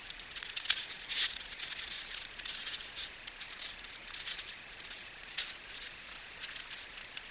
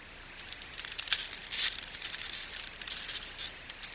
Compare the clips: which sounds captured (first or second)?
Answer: second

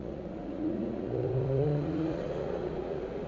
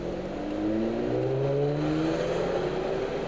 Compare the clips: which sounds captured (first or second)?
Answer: second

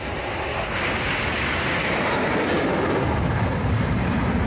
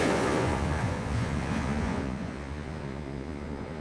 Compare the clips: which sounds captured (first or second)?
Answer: first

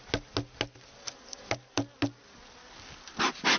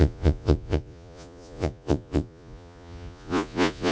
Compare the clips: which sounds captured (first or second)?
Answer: first